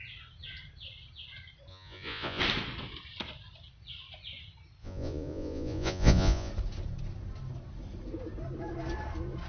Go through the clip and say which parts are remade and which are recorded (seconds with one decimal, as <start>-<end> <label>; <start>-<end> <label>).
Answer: 0.0-1.7 recorded; 1.7-2.4 remade; 2.4-4.8 recorded; 4.8-6.5 remade; 6.5-9.5 recorded